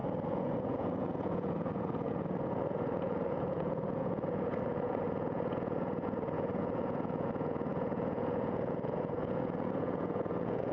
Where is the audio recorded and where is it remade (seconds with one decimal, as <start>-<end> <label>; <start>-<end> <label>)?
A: 0.0-10.7 remade